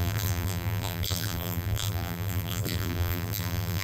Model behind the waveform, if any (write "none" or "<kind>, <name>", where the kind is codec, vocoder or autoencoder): vocoder, BigVGAN v2